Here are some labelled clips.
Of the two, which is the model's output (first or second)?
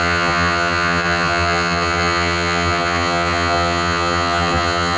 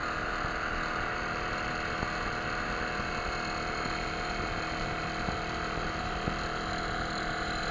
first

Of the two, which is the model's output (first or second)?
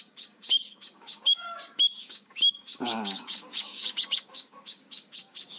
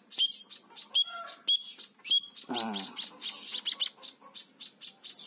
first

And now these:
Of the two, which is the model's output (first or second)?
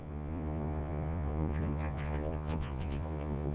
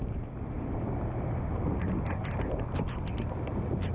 first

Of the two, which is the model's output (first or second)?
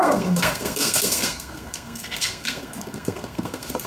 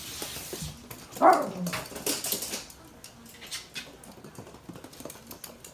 first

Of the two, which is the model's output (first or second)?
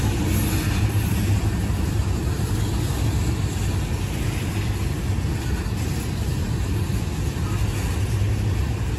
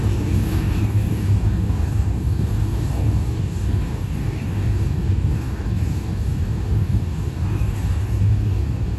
second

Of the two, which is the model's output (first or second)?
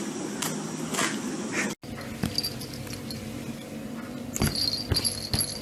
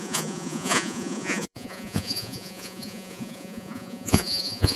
second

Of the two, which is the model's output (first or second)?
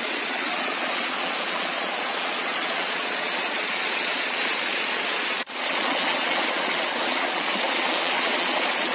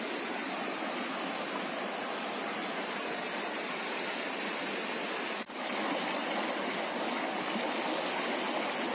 first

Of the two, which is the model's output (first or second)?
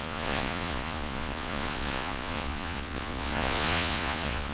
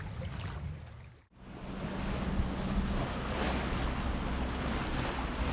first